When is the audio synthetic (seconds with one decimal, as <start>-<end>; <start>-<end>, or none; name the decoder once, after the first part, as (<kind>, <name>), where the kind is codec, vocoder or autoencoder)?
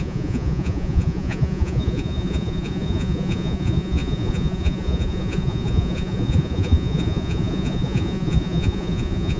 0.0-9.4 (vocoder, Vocos)